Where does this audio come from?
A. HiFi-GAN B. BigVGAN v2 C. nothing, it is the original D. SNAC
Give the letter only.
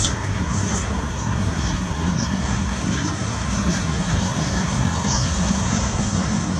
D